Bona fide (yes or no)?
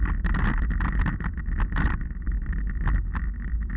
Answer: yes